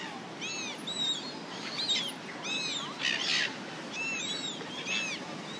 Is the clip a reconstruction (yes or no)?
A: no